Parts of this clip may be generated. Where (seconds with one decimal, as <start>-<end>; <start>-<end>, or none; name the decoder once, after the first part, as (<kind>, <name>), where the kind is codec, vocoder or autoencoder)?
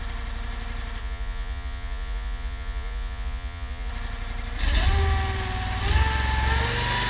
1.0-3.9 (vocoder, Vocos)